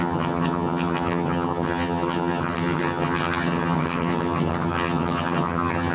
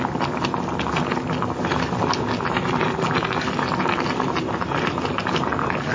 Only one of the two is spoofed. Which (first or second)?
first